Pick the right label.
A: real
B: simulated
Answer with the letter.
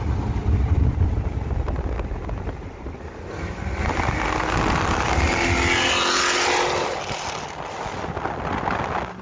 A